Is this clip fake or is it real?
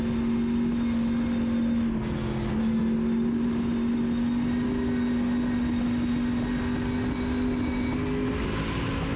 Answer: real